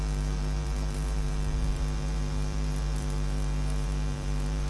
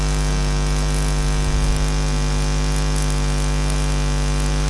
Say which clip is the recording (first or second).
second